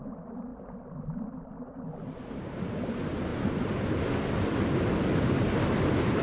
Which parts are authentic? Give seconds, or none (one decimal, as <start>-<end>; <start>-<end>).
0.0-3.3; 4.0-6.2